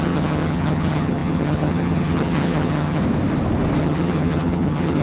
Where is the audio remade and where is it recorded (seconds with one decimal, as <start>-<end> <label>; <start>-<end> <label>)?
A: 0.0-3.0 remade; 3.0-3.8 recorded; 3.8-5.0 remade